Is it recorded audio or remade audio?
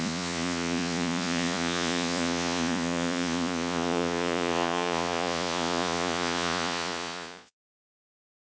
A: remade